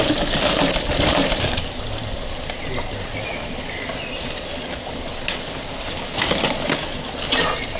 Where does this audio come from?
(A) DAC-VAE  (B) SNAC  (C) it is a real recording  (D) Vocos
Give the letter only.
C